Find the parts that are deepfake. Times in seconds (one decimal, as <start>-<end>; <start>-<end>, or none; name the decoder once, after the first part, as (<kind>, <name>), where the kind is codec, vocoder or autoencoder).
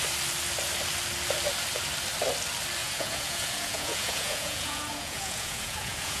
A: 2.8-6.2 (vocoder, Vocos)